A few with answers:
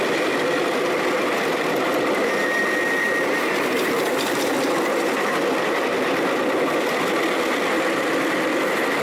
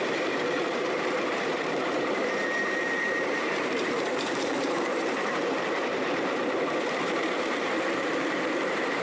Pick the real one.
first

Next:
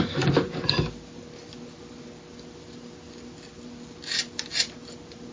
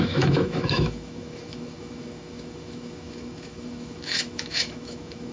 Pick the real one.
first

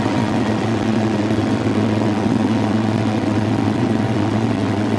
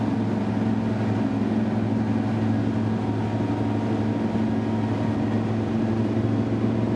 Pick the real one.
second